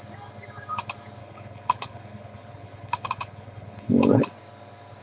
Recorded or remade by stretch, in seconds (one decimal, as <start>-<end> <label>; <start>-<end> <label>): 0.0-1.2 recorded; 1.2-4.2 remade; 4.2-5.0 recorded